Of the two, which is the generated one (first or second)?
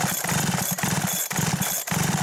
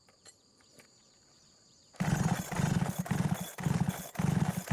first